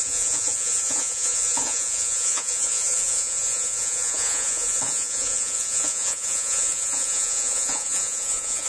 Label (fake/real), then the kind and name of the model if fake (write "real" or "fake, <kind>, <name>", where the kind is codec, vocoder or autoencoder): fake, vocoder, Vocos